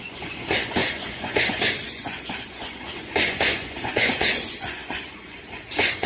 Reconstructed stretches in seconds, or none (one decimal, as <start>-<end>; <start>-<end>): 0.0-6.1